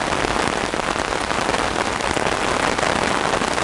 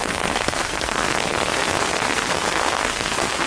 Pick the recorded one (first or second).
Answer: first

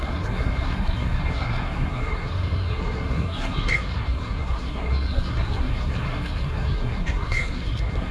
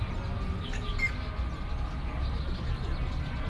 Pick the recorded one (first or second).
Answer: second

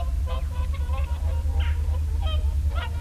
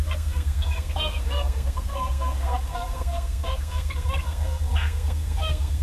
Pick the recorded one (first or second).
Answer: first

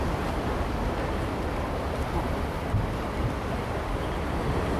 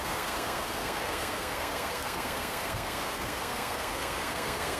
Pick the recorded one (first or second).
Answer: first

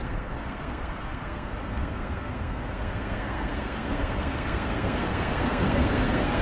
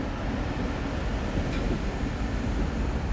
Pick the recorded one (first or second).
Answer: second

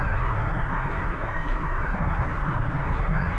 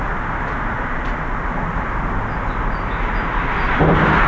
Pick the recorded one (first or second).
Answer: second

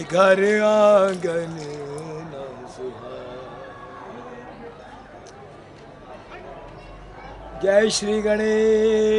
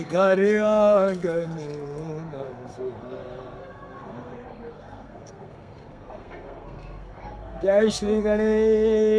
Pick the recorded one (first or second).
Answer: first